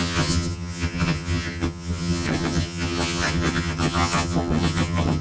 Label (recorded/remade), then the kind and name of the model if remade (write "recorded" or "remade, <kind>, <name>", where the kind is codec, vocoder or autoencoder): remade, vocoder, HiFi-GAN